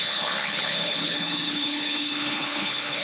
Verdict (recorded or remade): remade